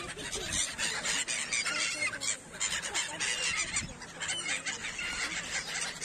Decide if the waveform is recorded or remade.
recorded